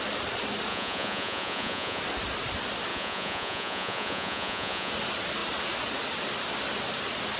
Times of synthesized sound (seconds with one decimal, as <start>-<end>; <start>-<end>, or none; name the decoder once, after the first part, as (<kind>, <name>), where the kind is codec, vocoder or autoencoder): 0.7-2.0 (vocoder, Vocos); 2.9-4.9